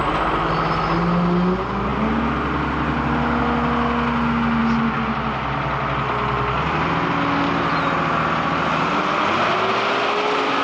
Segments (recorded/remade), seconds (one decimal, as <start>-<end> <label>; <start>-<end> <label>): 0.0-10.6 recorded